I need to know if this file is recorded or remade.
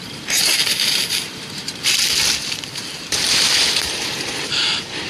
remade